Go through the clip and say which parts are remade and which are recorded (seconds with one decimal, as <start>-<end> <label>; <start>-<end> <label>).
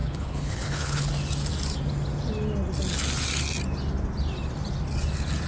0.0-1.1 remade; 1.1-5.5 recorded